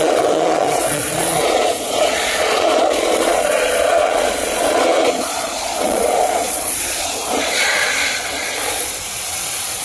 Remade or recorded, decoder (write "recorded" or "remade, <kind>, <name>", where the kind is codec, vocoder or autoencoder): remade, vocoder, Vocos